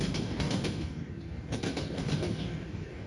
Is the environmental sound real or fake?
fake